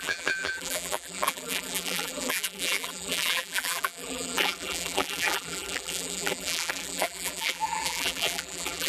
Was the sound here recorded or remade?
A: remade